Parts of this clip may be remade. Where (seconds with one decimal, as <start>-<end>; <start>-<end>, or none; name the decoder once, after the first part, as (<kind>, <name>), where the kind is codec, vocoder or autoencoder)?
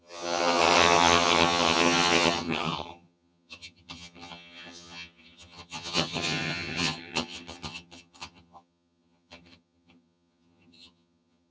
0.0-11.5 (vocoder, HiFi-GAN)